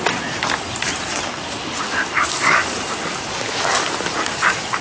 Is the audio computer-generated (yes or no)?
no